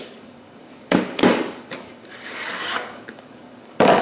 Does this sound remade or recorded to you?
remade